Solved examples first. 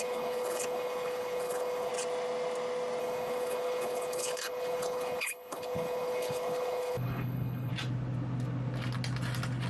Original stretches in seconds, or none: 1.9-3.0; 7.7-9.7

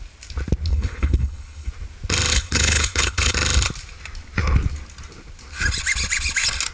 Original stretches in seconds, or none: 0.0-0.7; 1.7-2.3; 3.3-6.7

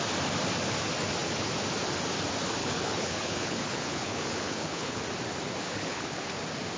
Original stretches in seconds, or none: 0.0-2.6; 5.0-5.6; 6.3-6.8

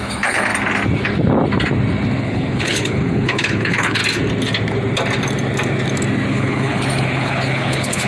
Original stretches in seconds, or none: 0.5-2.2; 4.0-6.3